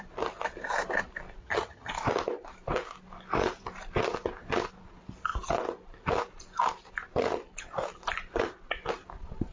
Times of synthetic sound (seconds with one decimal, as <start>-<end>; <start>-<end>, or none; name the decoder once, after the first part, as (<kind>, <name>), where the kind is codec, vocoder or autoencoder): 1.4-1.9 (vocoder, HiFi-GAN)